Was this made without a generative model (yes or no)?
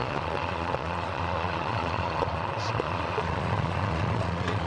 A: no